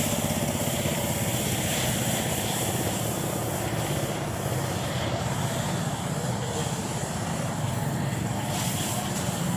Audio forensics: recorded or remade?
recorded